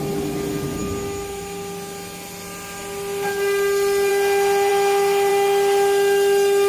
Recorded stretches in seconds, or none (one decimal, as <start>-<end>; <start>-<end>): 0.0-6.7